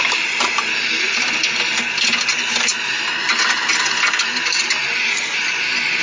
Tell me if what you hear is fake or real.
real